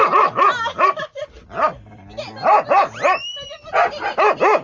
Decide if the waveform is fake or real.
real